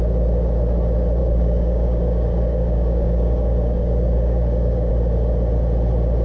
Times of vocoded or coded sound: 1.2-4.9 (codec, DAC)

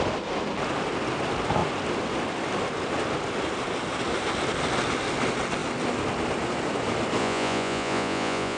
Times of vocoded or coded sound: 7.2-8.6 (vocoder, Vocos)